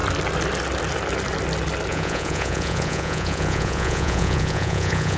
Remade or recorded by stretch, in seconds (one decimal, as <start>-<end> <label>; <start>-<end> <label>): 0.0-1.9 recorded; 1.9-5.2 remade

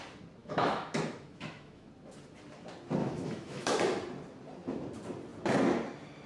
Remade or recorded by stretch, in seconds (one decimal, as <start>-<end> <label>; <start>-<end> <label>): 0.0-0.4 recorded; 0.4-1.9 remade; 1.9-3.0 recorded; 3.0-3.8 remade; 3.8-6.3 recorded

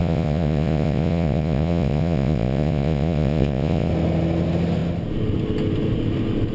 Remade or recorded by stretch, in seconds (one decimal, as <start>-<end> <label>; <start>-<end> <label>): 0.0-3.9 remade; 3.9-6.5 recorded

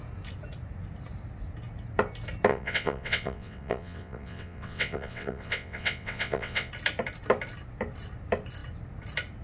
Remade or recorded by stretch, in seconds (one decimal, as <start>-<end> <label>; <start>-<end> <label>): 0.0-2.5 recorded; 2.5-6.7 remade; 6.7-9.4 recorded

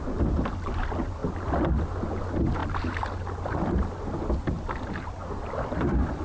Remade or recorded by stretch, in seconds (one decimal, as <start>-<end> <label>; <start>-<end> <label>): 0.0-6.2 recorded